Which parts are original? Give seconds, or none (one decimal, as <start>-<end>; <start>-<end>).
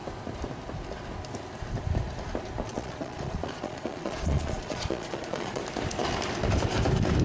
0.0-2.7; 5.6-7.2